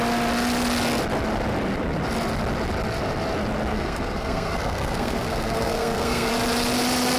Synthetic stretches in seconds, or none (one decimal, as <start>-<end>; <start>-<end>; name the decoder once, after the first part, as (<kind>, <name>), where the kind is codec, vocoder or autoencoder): 3.7-6.3 (codec, SNAC)